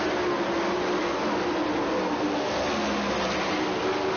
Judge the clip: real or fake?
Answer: real